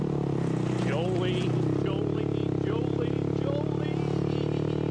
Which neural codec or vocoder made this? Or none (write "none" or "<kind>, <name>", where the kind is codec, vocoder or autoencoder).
none